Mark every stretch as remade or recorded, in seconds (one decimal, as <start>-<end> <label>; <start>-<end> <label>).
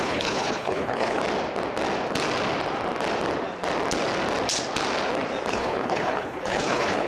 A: 0.0-1.2 remade; 1.2-5.5 recorded; 5.5-7.1 remade